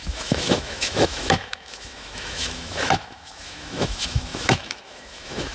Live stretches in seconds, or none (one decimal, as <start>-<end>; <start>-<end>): none